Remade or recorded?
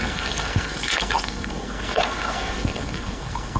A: remade